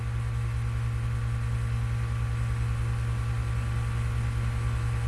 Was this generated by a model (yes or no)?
no